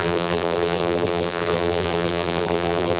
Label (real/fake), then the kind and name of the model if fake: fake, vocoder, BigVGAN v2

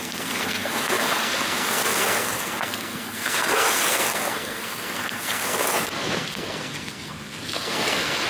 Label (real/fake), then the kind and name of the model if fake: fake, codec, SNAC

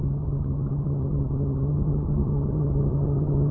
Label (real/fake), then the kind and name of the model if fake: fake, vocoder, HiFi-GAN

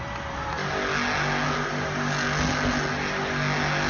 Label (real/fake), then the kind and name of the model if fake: real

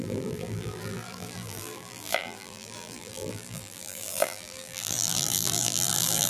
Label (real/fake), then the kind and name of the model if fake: fake, vocoder, BigVGAN v2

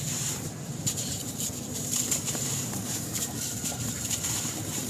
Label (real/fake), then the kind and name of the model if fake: fake, vocoder, BigVGAN v2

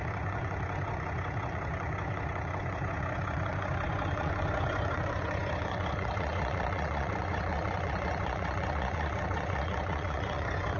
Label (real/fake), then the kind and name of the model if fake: fake, vocoder, Vocos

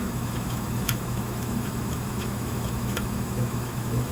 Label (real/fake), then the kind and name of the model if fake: fake, autoencoder, DAC-VAE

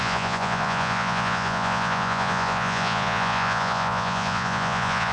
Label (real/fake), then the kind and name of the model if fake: fake, vocoder, Vocos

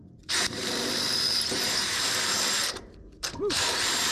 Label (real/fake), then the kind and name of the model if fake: fake, vocoder, BigVGAN v2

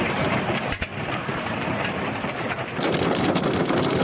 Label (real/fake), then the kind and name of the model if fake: real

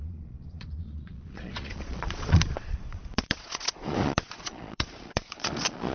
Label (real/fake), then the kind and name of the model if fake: fake, vocoder, Vocos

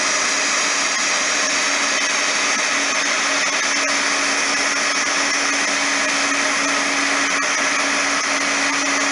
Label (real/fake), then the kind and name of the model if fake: real